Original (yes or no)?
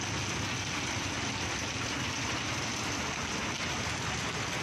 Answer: yes